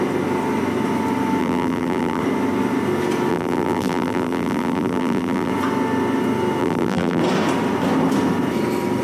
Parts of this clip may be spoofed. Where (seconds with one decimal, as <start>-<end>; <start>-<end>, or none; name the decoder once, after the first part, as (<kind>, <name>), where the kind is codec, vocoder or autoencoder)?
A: 1.4-2.2 (vocoder, BigVGAN v2); 3.3-5.5; 6.6-7.2